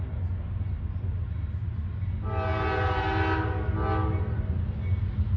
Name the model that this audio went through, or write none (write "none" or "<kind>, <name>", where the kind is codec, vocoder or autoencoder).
none